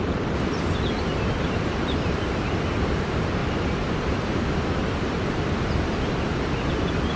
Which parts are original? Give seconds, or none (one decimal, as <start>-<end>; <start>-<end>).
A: 0.0-7.2